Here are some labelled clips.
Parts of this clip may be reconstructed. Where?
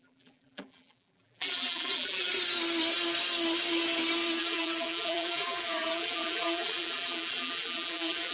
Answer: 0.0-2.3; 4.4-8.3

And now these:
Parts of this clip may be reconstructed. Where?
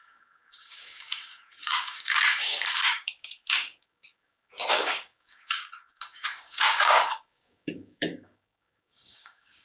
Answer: 0.0-9.6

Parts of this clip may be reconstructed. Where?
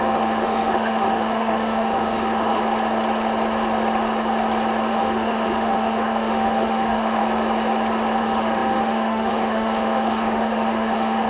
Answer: 0.0-2.6; 4.9-7.2; 8.2-11.3